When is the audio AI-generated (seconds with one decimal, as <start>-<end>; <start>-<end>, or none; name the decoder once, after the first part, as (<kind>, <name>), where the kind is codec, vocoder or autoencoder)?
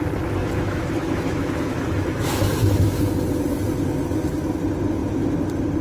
0.4-3.0 (autoencoder, DAC-VAE)